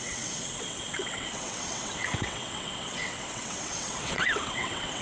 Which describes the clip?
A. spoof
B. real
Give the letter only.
A